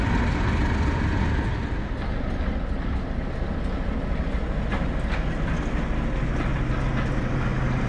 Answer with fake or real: real